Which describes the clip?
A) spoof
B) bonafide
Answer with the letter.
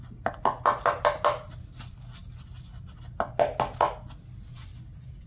B